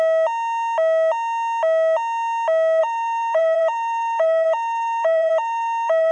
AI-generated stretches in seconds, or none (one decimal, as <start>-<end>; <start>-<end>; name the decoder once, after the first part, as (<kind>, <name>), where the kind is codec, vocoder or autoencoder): 2.8-6.1 (vocoder, BigVGAN v2)